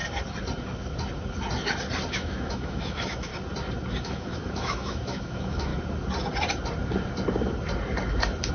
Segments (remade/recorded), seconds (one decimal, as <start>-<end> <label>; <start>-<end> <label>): 0.0-2.1 recorded; 2.1-3.3 remade; 3.3-4.0 recorded; 4.0-5.7 remade; 5.7-8.5 recorded